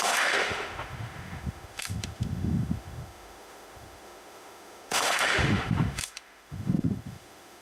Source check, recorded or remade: remade